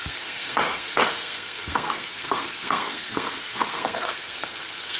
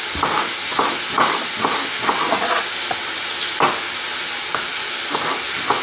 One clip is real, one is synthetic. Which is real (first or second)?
second